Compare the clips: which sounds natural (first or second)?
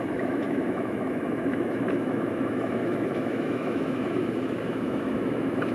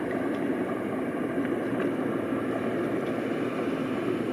second